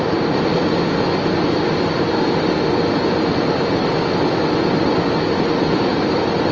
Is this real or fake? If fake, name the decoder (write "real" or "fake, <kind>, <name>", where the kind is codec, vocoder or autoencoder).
real